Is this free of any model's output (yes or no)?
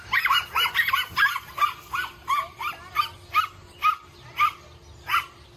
yes